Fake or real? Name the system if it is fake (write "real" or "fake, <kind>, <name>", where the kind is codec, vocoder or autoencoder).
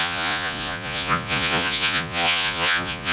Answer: fake, vocoder, Vocos